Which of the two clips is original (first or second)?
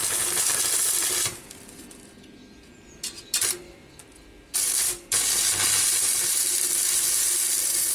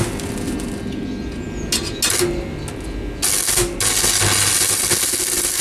second